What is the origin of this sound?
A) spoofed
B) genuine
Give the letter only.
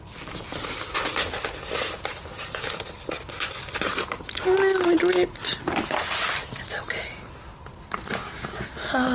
B